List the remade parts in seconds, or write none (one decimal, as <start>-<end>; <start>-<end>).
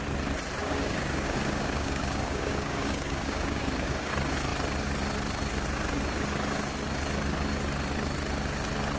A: 0.6-4.1